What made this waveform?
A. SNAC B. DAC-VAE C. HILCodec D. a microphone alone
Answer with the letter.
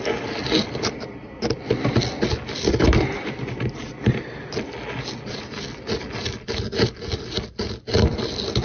D